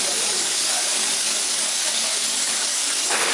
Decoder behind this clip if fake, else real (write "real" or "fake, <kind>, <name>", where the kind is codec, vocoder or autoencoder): fake, codec, DAC